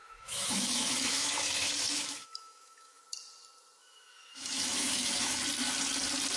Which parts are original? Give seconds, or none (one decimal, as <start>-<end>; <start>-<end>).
3.0-3.8; 5.4-6.4